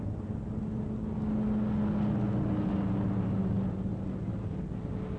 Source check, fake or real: real